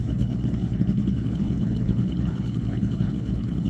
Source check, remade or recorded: remade